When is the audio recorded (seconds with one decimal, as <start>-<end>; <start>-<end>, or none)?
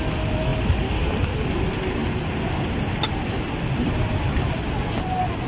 0.0-5.5